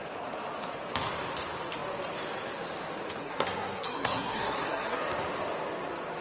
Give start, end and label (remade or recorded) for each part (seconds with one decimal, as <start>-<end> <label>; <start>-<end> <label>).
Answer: 0.0-3.2 recorded; 3.2-5.0 remade; 5.0-6.2 recorded